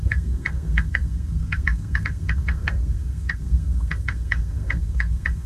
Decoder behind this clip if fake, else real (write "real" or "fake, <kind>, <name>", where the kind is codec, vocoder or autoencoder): fake, codec, SNAC